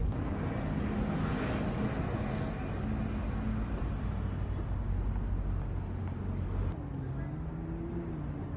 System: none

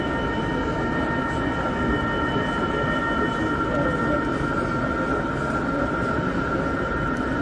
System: none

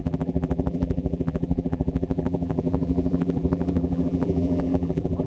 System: vocoder, BigVGAN v2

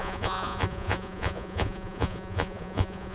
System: vocoder, Vocos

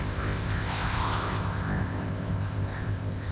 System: codec, ZipCodec